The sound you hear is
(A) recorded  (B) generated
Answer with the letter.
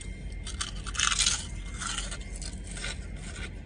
A